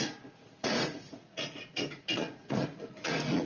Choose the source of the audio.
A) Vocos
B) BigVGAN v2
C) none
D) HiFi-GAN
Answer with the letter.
A